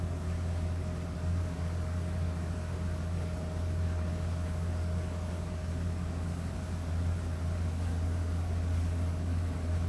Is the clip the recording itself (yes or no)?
no